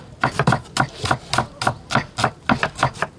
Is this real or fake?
real